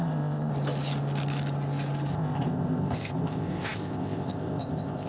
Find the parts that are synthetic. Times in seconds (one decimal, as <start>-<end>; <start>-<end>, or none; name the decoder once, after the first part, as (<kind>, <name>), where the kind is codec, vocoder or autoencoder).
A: 0.0-0.5 (codec, ZipCodec); 2.1-5.1